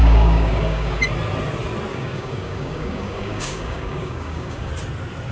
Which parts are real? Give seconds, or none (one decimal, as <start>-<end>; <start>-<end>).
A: 1.0-1.9; 4.7-5.3